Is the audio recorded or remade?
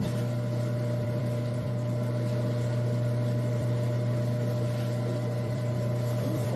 remade